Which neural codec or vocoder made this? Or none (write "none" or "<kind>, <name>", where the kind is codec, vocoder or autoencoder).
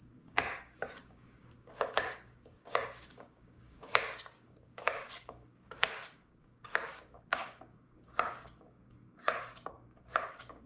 codec, DAC